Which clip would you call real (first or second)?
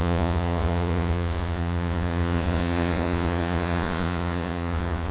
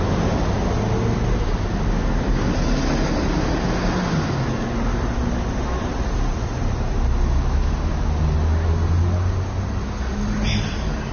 second